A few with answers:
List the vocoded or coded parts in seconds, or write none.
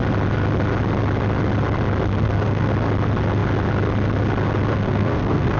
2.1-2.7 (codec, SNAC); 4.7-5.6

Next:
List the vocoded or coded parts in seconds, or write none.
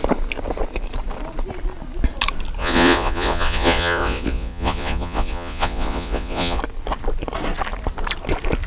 2.6-6.6 (vocoder, Vocos)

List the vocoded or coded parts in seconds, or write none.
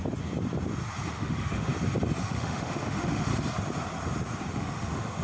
1.1-1.7 (autoencoder, DAC-VAE); 2.2-3.3; 4.5-5.2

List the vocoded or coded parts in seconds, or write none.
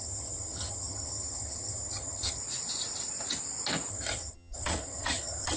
0.0-2.4 (vocoder, HiFi-GAN); 3.9-5.6